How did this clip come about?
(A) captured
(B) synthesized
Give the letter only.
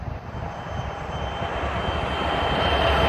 A